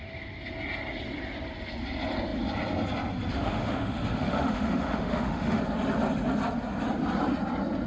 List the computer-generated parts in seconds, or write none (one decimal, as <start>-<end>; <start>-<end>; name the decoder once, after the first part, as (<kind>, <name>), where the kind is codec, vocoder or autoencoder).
3.3-5.6 (autoencoder, DAC-VAE)